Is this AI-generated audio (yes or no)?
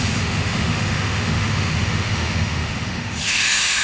yes